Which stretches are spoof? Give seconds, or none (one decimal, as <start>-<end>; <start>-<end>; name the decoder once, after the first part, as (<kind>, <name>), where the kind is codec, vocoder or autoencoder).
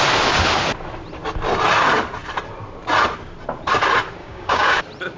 4.2-4.8 (codec, DAC)